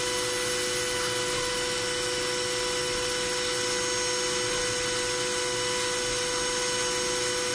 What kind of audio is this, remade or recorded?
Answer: recorded